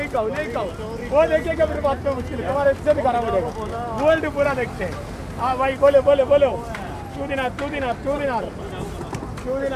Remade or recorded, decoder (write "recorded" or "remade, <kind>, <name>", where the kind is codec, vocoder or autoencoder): recorded